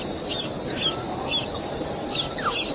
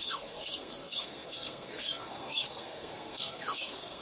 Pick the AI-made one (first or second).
second